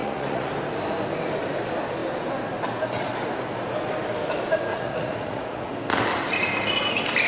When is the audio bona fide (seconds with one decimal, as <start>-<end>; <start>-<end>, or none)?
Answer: 0.5-4.7; 5.7-7.3